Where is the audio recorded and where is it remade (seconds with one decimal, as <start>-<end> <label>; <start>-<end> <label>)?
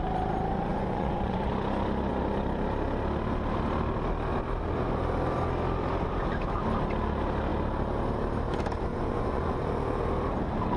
0.0-0.7 recorded; 0.7-1.5 remade; 1.5-8.9 recorded; 8.9-9.6 remade; 9.6-10.8 recorded